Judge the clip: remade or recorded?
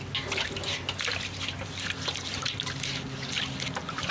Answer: recorded